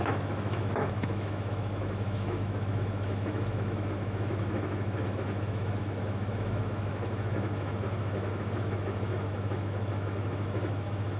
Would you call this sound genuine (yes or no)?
no